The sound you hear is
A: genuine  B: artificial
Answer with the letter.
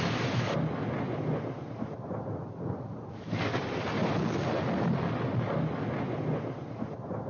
A